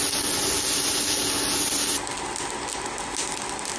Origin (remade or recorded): recorded